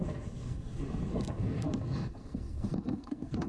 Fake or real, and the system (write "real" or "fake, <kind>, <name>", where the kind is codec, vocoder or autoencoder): fake, codec, SNAC